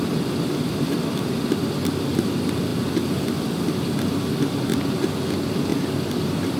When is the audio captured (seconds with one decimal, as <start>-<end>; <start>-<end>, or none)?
0.0-6.6